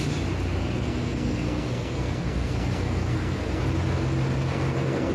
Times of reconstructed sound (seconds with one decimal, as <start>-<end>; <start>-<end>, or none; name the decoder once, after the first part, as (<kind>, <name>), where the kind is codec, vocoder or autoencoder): 0.6-3.6 (codec, SNAC); 4.4-5.1